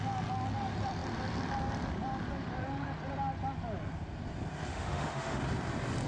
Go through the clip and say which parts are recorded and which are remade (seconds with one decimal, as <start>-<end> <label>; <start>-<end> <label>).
0.0-4.7 recorded; 4.7-5.4 remade; 5.4-6.1 recorded